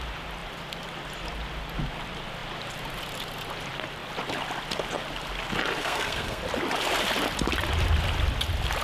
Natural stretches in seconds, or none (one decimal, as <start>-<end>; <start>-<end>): 0.0-5.8; 6.4-8.8